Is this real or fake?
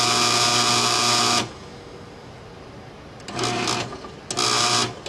real